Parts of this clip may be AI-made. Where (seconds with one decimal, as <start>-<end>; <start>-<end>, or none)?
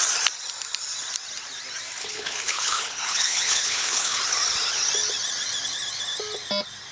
2.0-4.2